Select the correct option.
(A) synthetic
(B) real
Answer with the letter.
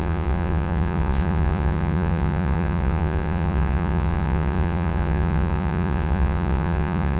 A